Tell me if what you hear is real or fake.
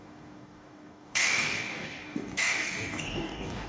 fake